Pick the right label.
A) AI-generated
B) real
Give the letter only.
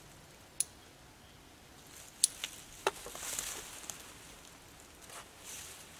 B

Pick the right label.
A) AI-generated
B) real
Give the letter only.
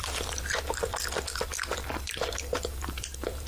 A